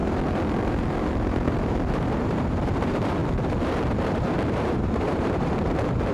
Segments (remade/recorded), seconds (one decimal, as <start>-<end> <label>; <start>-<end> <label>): 0.0-0.6 recorded; 0.6-6.1 remade